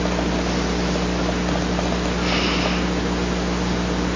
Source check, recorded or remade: recorded